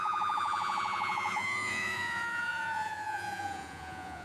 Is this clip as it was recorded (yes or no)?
no